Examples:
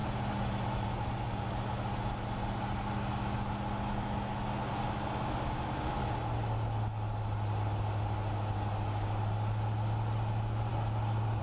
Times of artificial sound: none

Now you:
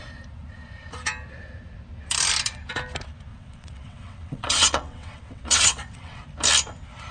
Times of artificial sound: 3.3-6.2